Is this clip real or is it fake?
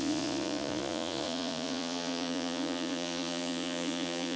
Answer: fake